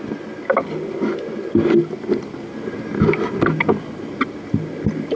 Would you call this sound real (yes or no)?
yes